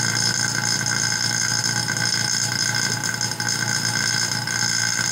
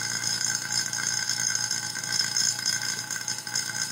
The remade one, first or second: second